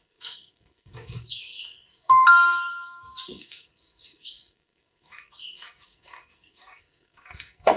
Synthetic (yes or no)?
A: yes